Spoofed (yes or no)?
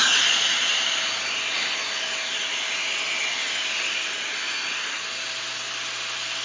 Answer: no